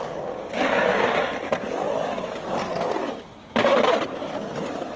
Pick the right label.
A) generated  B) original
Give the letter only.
B